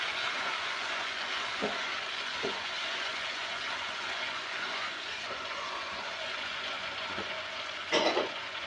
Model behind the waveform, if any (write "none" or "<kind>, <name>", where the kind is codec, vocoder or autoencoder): vocoder, Vocos